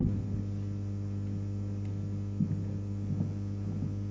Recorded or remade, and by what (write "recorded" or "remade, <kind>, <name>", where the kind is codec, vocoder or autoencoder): recorded